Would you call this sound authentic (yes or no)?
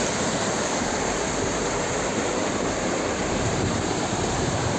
no